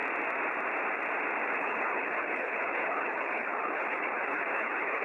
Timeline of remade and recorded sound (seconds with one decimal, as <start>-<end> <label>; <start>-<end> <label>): 0.0-1.6 recorded; 1.6-5.0 remade